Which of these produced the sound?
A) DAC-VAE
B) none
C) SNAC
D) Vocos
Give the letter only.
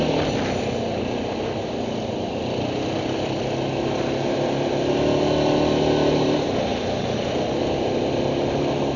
B